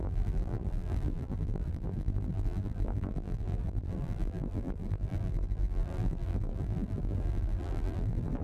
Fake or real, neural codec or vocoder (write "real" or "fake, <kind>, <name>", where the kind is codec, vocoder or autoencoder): fake, vocoder, BigVGAN v2